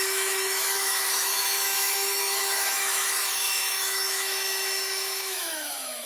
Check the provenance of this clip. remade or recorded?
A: remade